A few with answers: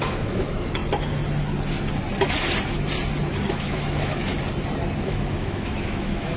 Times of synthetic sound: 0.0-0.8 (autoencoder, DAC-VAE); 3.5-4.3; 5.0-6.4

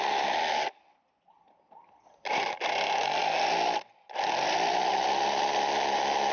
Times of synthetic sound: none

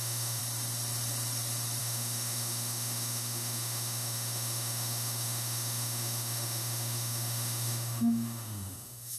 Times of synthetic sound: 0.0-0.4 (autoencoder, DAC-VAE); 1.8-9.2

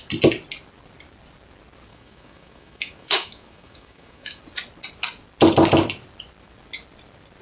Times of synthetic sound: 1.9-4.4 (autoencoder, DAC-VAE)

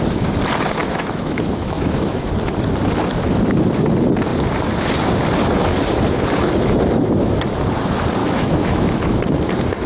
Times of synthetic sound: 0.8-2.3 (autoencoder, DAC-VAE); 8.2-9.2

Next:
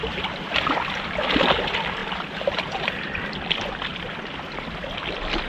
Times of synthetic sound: none

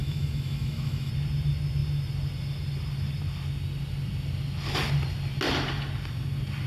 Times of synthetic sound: 0.0-1.1 (autoencoder, DAC-VAE)